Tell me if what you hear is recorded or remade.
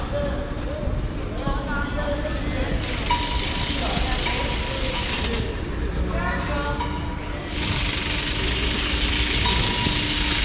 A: recorded